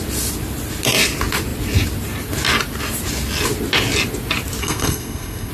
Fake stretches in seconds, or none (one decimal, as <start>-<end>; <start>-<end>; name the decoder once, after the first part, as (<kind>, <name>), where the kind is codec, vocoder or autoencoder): 4.6-5.5 (codec, SNAC)